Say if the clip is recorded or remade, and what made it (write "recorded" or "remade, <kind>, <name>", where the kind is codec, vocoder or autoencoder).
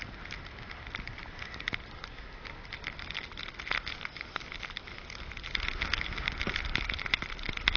recorded